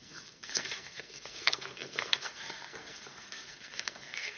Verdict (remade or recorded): remade